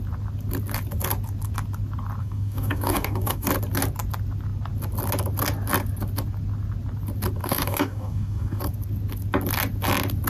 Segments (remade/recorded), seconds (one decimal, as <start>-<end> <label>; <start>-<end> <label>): 0.0-2.2 recorded; 2.2-3.5 remade; 3.5-7.4 recorded; 7.4-8.6 remade; 8.6-10.3 recorded